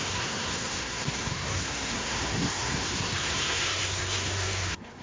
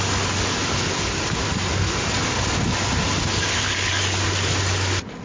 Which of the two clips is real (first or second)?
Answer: second